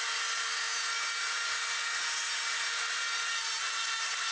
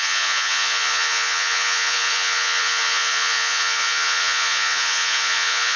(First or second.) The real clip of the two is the first